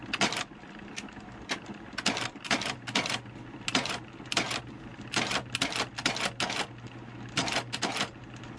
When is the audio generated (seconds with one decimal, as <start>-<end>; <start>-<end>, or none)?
none